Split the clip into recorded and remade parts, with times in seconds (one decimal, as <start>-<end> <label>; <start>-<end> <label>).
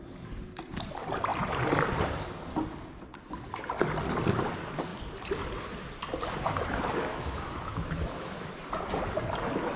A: 0.0-7.1 recorded; 7.1-8.5 remade; 8.5-9.8 recorded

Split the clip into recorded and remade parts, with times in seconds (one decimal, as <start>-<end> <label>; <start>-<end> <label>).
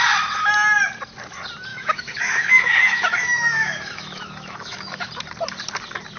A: 0.0-1.7 recorded; 1.7-5.1 remade; 5.1-6.2 recorded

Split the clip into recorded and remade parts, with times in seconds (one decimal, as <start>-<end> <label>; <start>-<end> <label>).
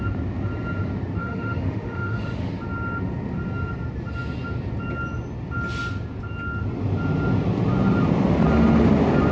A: 0.0-1.2 recorded; 1.2-2.5 remade; 2.5-9.3 recorded